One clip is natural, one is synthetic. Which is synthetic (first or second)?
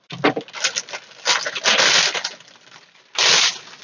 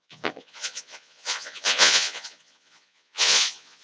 second